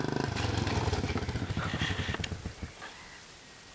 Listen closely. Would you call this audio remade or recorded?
recorded